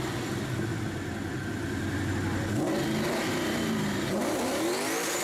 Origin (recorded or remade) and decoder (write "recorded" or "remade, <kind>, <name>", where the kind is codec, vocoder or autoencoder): recorded